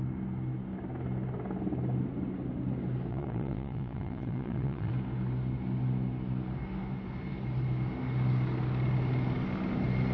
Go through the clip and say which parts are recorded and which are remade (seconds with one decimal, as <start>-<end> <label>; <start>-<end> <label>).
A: 0.0-3.1 recorded; 3.1-4.9 remade; 4.9-10.1 recorded